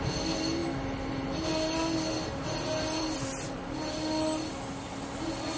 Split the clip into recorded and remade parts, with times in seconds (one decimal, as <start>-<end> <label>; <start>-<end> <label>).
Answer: 0.0-5.6 recorded